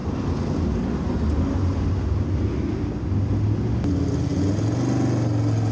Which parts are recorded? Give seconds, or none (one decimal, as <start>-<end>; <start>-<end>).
1.9-2.7; 3.7-5.7